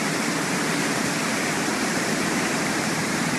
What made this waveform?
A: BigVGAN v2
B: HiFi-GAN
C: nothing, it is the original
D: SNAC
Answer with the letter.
A